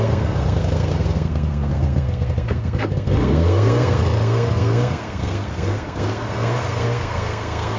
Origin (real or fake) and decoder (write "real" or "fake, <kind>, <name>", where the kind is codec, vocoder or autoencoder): fake, codec, SNAC